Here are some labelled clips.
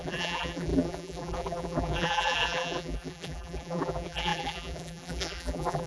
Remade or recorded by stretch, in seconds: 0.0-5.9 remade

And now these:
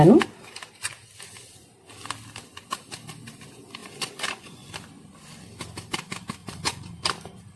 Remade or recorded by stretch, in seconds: 0.0-3.8 recorded; 3.8-4.7 remade; 4.7-6.4 recorded; 6.4-7.0 remade; 7.0-7.6 recorded

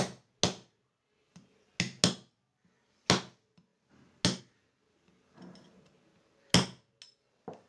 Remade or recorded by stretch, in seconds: 0.0-7.7 recorded

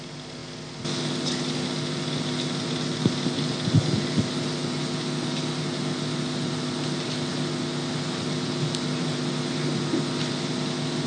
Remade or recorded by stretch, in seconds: 0.0-11.1 recorded

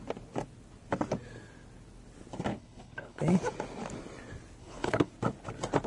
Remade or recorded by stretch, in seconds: 0.0-2.5 recorded; 2.5-3.2 remade; 3.2-4.6 recorded; 4.6-5.1 remade; 5.1-5.9 recorded

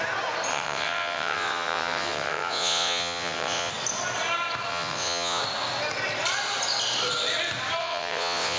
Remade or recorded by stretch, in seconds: 0.0-0.5 recorded; 0.5-3.7 remade; 3.7-4.7 recorded; 4.7-5.4 remade; 5.4-7.8 recorded; 7.8-8.6 remade

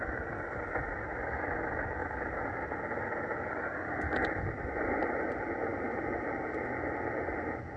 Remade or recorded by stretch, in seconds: 0.0-7.8 recorded